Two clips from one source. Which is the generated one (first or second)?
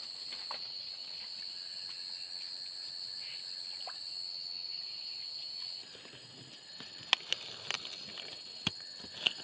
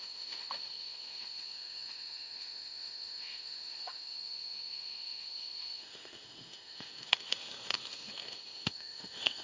second